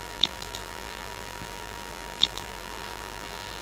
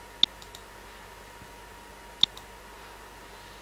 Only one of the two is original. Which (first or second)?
second